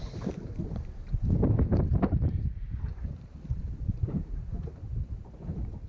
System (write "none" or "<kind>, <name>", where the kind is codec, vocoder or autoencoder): none